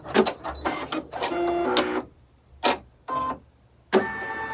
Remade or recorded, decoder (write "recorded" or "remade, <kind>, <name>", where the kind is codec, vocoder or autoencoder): recorded